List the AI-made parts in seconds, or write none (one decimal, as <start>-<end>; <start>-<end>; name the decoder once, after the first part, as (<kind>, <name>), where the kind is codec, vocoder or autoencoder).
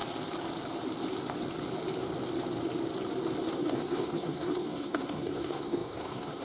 3.5-6.4 (codec, SNAC)